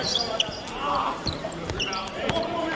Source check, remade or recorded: remade